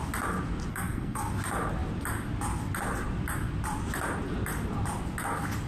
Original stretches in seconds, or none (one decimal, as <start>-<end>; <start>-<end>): 0.0-0.7; 1.3-5.7